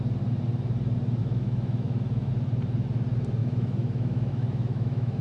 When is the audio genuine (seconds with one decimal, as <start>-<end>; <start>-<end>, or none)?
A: 0.0-1.2; 2.3-3.4